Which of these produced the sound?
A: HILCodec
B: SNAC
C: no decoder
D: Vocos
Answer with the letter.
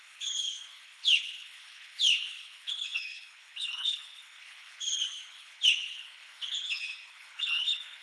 A